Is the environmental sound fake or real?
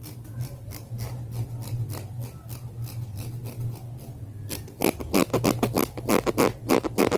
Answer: real